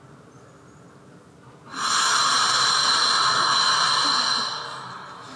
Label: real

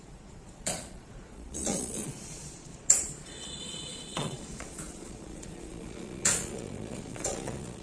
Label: fake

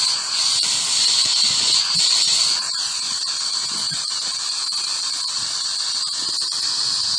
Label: fake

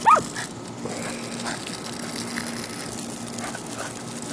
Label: real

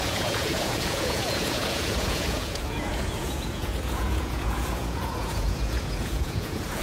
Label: fake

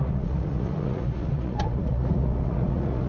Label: fake